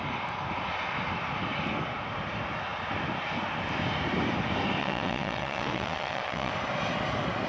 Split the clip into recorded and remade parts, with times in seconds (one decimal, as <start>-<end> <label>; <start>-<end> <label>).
0.0-4.8 recorded; 4.8-6.5 remade; 6.5-7.5 recorded